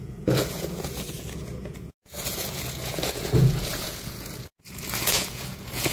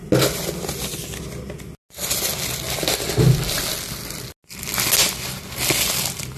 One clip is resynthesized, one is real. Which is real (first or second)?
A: second